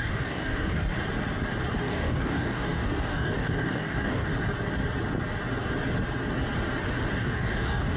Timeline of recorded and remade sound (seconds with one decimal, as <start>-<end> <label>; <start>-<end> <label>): 0.0-0.9 remade; 0.9-1.8 recorded; 1.8-4.3 remade; 4.3-7.1 recorded; 7.1-8.0 remade